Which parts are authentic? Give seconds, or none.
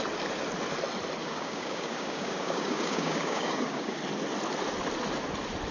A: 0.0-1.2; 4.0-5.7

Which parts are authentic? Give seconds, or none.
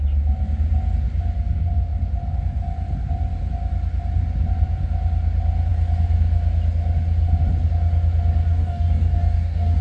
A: 0.0-8.5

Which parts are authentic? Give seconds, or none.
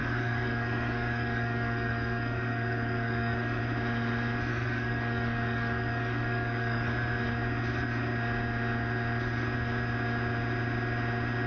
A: 3.6-4.5; 6.9-11.5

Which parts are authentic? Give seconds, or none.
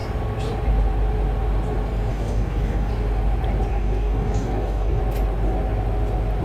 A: 0.0-2.1; 2.9-3.7; 5.0-6.4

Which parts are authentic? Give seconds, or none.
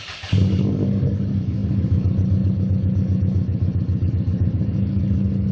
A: none